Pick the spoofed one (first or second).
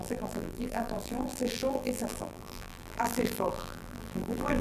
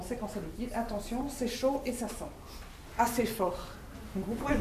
first